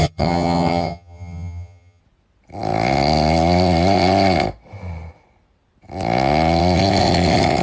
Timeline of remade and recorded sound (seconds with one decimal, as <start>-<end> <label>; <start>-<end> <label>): 0.0-2.0 remade; 2.0-7.6 recorded

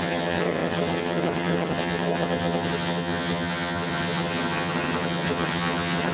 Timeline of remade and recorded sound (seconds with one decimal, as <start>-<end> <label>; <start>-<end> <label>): 0.0-6.1 remade

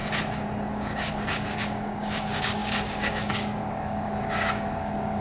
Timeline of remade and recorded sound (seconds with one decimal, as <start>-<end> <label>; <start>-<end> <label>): 0.0-0.7 recorded; 0.7-5.2 remade